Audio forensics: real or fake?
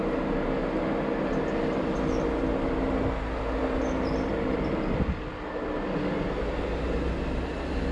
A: real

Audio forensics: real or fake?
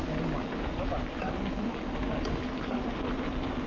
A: real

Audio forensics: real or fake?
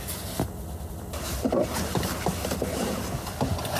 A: real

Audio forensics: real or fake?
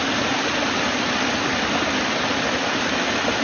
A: real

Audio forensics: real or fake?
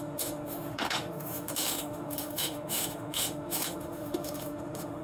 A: fake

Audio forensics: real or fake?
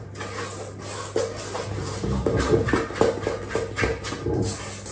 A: real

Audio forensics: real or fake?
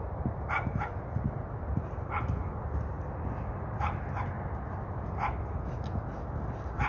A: real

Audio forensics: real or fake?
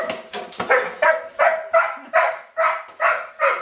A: real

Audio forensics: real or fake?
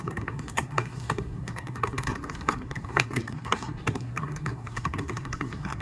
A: fake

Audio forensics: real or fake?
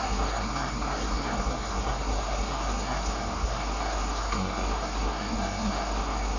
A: fake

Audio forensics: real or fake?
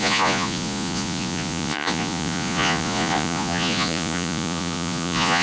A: fake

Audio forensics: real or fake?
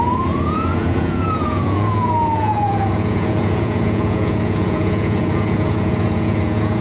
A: fake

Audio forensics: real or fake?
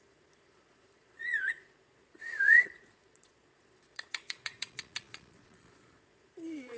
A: fake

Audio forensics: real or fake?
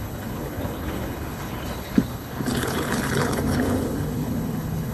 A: fake